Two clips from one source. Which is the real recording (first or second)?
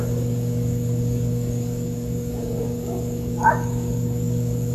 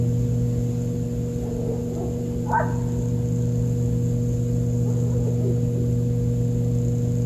second